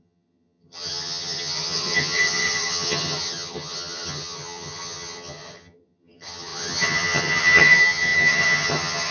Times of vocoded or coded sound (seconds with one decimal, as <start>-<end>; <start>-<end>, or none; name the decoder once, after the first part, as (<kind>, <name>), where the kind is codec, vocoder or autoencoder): 0.0-9.1 (vocoder, HiFi-GAN)

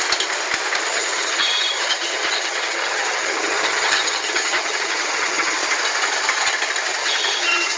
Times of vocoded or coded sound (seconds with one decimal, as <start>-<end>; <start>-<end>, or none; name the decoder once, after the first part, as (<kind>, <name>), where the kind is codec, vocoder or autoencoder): 0.9-5.6 (vocoder, HiFi-GAN); 7.0-7.8

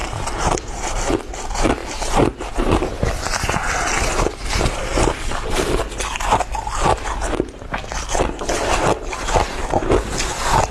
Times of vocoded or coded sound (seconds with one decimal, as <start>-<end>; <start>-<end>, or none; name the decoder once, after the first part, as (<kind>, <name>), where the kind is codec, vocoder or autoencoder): 1.8-2.5 (vocoder, BigVGAN v2); 4.9-5.8

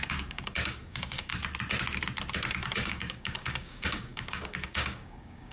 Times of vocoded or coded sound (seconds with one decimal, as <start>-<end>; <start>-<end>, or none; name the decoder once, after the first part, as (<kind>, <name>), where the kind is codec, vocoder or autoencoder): 0.0-1.3 (codec, DAC); 2.5-5.5

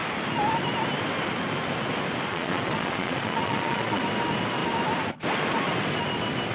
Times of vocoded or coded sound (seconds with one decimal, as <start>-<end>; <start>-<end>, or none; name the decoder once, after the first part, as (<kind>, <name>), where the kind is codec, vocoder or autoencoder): 2.3-4.0 (vocoder, Vocos)

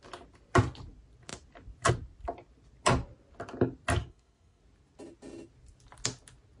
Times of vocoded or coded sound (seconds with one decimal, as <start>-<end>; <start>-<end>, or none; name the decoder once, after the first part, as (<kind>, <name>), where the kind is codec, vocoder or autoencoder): 4.0-4.6 (codec, SNAC)

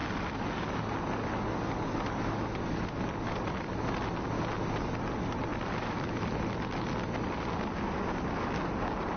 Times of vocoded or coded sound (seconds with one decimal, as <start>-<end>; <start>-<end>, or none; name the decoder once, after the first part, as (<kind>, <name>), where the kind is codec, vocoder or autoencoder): none